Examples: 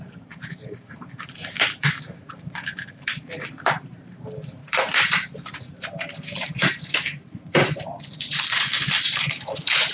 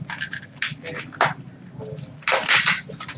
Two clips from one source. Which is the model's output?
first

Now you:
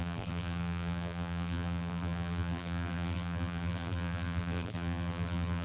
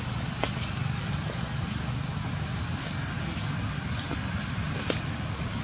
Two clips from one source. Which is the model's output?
first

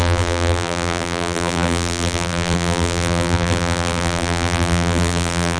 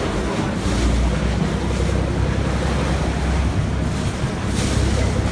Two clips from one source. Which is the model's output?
first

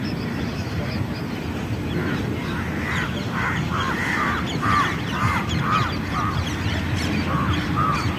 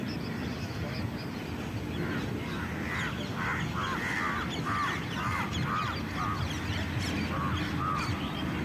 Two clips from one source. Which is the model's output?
first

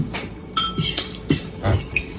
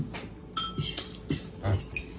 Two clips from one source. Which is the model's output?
first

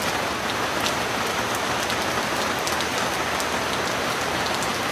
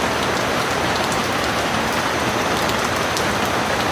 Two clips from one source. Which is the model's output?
second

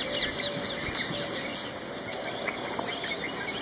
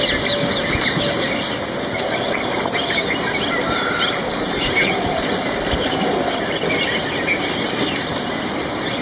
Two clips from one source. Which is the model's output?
second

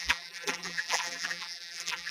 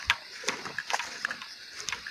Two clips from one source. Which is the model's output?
first